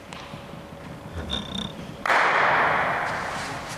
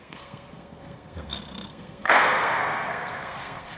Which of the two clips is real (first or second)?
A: first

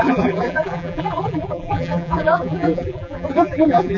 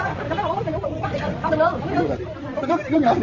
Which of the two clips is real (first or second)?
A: second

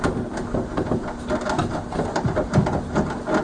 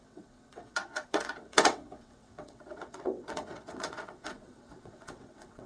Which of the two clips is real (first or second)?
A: first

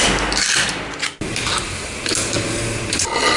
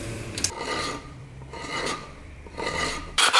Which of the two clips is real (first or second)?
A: first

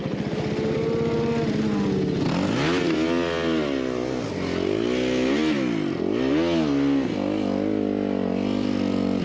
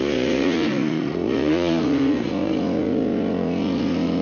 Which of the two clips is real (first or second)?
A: first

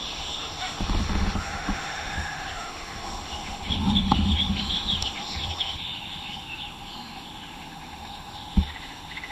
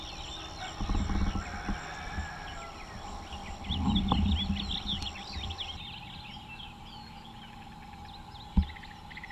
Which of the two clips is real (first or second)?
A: second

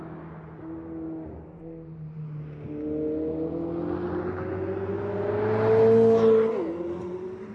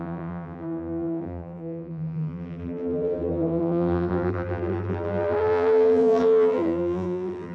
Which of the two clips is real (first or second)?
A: first